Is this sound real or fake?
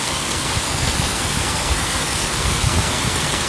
fake